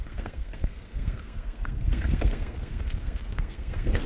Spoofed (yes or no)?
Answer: yes